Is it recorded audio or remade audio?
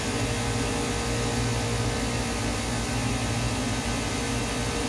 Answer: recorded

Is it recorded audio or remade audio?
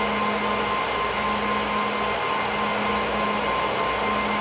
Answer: recorded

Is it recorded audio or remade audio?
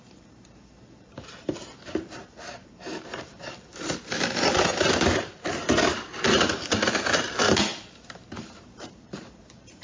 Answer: remade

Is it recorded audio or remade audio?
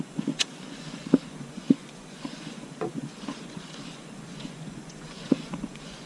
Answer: remade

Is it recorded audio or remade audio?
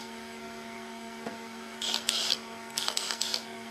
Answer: remade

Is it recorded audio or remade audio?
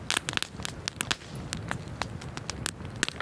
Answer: recorded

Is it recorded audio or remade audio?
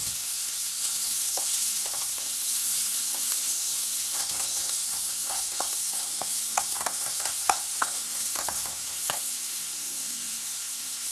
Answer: remade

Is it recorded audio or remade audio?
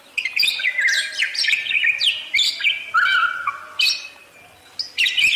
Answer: recorded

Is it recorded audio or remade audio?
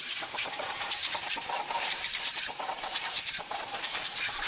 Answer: remade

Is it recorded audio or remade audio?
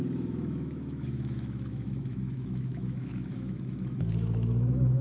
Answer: remade